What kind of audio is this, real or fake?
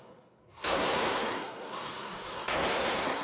fake